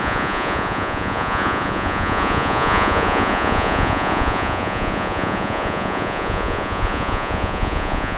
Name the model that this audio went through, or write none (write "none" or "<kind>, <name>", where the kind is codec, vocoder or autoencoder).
vocoder, Vocos